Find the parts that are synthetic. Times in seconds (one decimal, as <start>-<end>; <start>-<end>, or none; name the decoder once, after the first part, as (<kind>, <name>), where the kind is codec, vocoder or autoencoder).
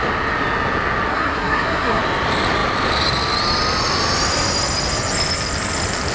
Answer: 1.1-2.0 (codec, SNAC)